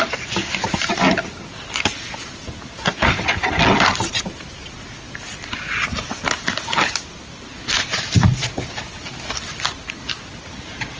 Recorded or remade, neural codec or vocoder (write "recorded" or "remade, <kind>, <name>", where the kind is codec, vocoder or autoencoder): recorded